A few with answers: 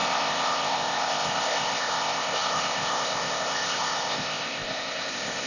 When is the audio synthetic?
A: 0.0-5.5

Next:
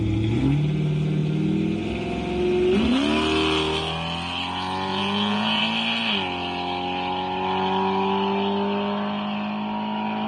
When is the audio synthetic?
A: 4.9-5.6

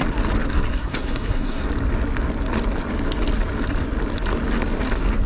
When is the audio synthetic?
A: 0.7-1.7

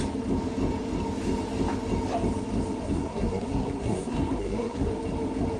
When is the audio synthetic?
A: 2.8-4.9

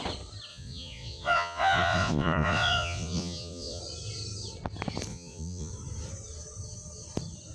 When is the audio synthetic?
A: 0.5-3.8; 5.1-5.7

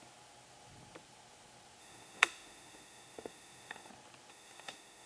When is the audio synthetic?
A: 1.8-3.9; 4.3-5.1

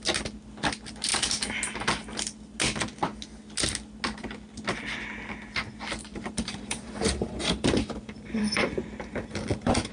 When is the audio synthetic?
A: 6.1-9.9

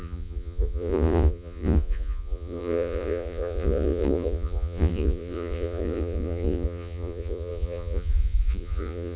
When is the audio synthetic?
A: 0.0-9.2